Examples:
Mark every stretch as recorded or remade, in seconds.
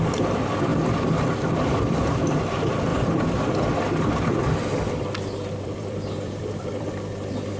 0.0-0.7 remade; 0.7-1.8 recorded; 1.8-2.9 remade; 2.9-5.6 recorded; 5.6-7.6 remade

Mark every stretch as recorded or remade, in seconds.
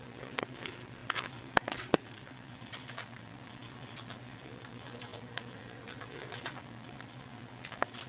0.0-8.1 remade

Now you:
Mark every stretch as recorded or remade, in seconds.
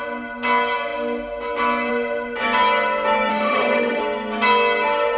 0.0-3.3 recorded; 3.3-4.0 remade; 4.0-5.2 recorded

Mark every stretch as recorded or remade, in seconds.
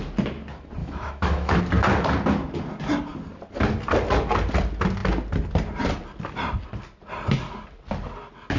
0.0-0.8 recorded; 0.8-1.6 remade; 1.6-8.6 recorded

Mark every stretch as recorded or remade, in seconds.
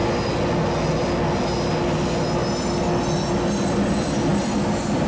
0.0-5.1 recorded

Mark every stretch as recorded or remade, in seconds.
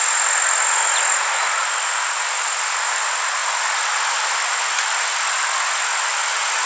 0.0-6.7 recorded